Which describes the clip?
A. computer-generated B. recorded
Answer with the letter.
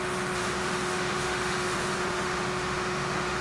A